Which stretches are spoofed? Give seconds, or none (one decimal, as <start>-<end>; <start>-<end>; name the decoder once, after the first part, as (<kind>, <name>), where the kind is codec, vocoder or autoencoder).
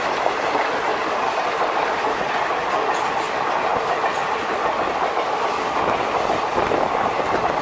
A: 0.9-2.2 (vocoder, BigVGAN v2); 6.5-7.6